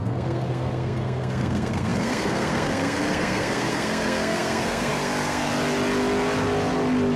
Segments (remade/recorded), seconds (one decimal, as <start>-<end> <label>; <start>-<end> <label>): 0.0-5.5 remade; 5.5-7.2 recorded